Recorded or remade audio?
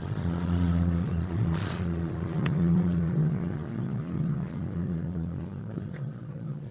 remade